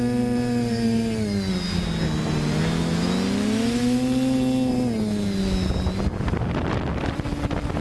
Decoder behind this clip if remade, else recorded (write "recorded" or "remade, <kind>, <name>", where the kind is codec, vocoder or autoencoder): recorded